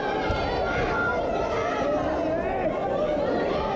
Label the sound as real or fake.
real